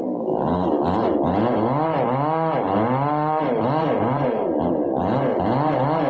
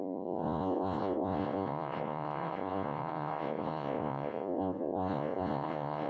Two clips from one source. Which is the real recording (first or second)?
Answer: first